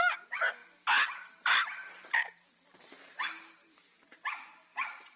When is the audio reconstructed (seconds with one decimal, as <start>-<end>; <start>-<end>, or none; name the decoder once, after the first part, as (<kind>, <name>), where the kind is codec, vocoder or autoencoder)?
1.8-5.2 (vocoder, BigVGAN v2)